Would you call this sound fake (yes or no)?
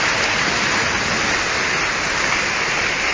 no